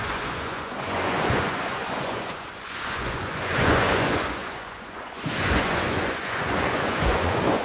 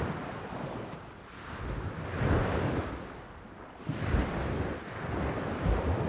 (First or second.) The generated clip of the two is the first